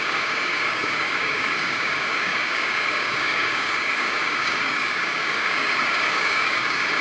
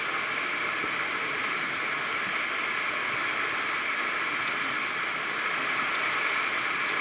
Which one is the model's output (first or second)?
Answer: first